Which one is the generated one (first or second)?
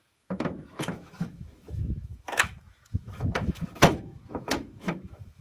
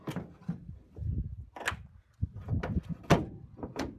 first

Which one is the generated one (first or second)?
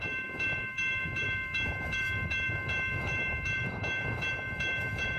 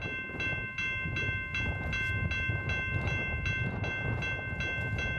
first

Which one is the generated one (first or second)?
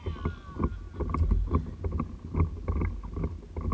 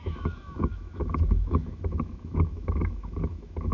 second